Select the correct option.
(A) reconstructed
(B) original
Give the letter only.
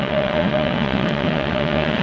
A